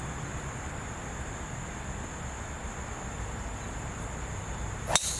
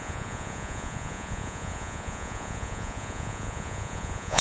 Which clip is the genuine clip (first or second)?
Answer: first